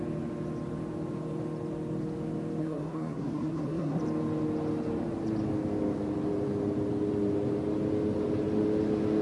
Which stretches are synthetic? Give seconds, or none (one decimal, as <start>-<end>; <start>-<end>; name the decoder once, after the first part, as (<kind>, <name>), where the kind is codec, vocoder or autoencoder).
2.6-4.0 (codec, SNAC)